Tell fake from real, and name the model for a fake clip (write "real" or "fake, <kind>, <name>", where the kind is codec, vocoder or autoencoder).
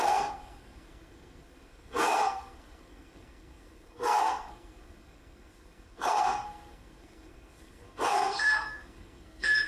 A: fake, codec, SNAC